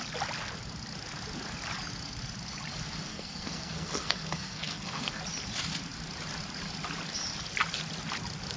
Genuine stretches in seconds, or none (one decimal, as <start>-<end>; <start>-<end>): 0.0-3.1; 5.2-8.6